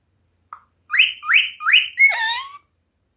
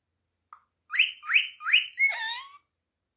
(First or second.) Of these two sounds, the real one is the second